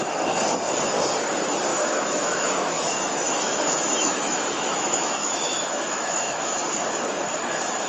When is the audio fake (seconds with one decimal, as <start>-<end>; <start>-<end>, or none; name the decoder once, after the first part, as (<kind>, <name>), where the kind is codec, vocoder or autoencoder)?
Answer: 1.7-6.4 (autoencoder, DAC-VAE)